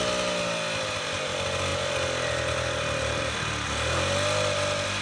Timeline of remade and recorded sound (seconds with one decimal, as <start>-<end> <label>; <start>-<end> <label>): 0.0-5.0 recorded